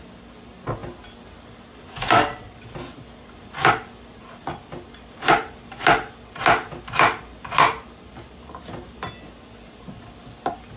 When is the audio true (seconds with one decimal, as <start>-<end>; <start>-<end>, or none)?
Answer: 0.0-10.8